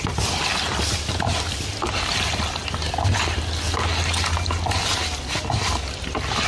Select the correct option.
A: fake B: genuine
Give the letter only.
B